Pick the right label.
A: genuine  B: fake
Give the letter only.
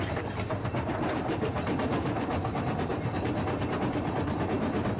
B